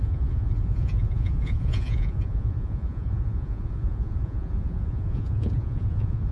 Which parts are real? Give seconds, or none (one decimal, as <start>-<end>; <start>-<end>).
none